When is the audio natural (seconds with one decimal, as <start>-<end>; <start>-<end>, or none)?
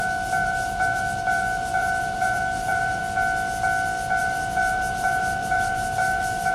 3.0-4.2